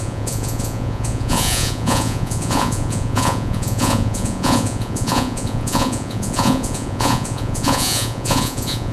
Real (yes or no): no